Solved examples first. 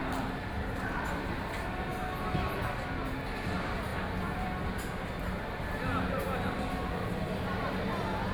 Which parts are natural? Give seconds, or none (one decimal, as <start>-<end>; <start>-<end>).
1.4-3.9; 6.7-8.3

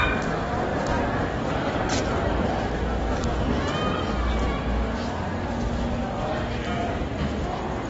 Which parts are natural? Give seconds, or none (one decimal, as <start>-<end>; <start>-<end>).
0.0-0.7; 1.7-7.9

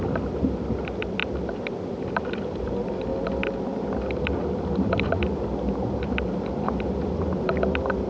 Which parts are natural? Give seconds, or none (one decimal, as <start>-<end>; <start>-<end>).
0.0-1.2; 2.3-3.1; 6.5-8.1

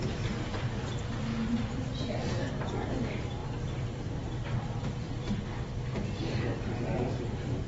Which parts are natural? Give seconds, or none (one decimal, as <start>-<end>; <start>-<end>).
1.3-2.2

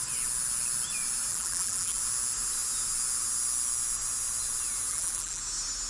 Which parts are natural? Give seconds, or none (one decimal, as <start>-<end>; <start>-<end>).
0.0-1.3; 2.0-4.9; 5.4-5.9